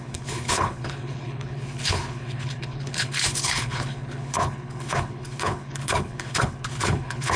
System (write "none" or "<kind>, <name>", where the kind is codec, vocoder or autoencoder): codec, HILCodec